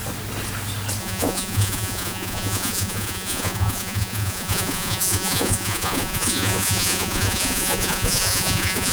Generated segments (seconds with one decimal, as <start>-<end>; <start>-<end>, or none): 1.0-8.9